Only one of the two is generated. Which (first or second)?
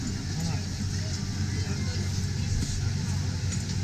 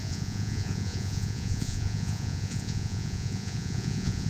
second